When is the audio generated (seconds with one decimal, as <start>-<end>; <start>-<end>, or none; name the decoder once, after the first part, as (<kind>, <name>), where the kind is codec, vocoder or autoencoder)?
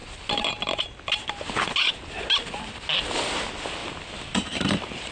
3.8-5.1 (vocoder, BigVGAN v2)